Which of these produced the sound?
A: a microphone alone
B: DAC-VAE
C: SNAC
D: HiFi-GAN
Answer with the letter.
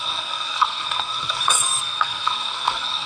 C